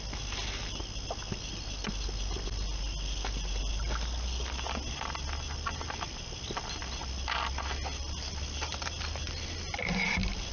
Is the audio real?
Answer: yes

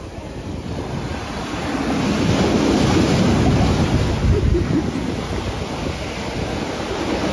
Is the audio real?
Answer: yes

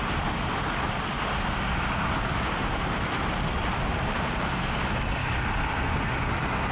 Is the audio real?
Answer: yes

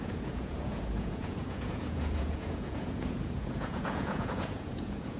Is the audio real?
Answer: no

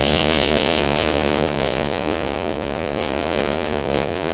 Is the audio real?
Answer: no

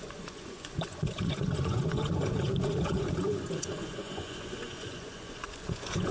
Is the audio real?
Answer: no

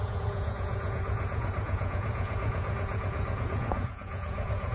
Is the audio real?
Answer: no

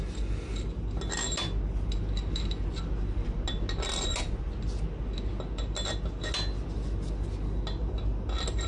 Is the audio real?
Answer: yes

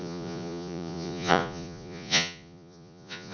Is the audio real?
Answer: no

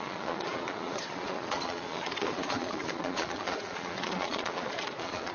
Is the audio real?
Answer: no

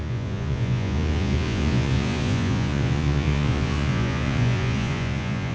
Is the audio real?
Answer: no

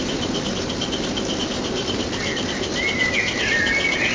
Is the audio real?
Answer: yes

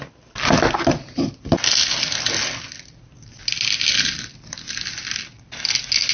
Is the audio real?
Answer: yes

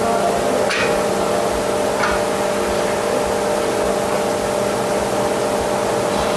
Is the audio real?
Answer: yes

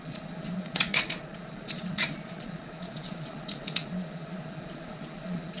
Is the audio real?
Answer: no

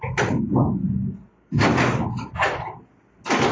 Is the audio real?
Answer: yes